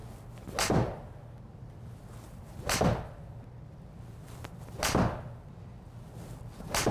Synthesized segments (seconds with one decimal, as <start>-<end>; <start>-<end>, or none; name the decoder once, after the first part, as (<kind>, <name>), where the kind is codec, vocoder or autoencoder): 1.5-6.9 (vocoder, BigVGAN v2)